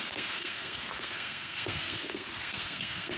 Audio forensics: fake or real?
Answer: fake